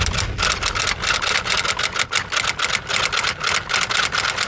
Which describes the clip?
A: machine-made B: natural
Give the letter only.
B